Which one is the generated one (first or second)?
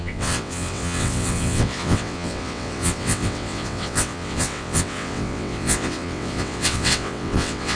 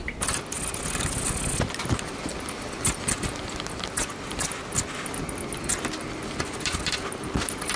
first